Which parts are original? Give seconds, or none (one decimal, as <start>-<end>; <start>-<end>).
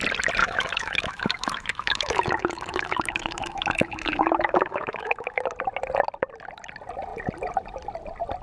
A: 0.0-0.4; 5.4-8.4